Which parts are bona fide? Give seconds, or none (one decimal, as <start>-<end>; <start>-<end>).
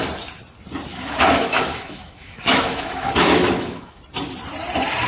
0.0-0.9; 4.0-5.1